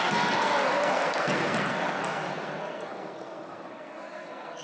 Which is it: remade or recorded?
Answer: remade